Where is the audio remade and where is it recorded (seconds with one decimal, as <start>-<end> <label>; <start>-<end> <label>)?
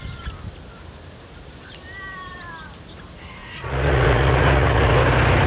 0.0-3.4 recorded; 3.4-4.9 remade; 4.9-5.5 recorded